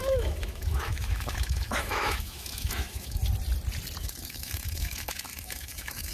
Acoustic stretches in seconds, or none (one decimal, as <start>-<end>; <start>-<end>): 3.2-4.0